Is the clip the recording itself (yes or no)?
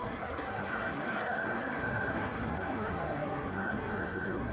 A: no